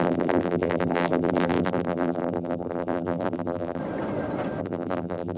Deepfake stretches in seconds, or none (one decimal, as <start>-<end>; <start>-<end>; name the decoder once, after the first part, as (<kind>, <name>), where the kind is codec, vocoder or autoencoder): 0.0-3.8 (vocoder, BigVGAN v2); 4.6-5.4